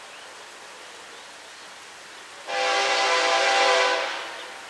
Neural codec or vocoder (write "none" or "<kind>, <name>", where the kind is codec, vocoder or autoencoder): none